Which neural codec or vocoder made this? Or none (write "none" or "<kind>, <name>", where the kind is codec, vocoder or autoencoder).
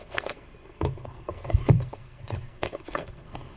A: codec, SNAC